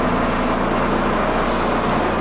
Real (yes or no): yes